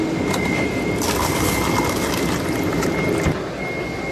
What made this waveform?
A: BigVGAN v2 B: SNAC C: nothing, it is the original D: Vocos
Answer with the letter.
C